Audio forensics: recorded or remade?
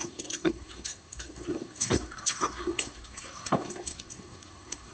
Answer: remade